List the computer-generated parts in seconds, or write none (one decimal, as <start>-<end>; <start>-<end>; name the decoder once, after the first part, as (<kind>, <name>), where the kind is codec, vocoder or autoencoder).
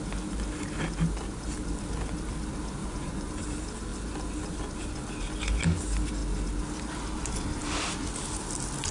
2.8-3.3 (vocoder, Vocos)